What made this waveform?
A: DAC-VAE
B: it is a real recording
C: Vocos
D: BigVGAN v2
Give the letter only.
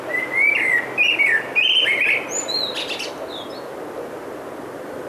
B